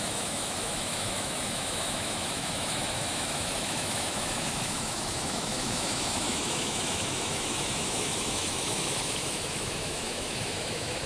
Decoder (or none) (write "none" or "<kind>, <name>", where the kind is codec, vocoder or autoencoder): autoencoder, DAC-VAE